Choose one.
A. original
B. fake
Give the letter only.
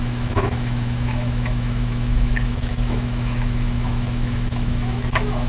B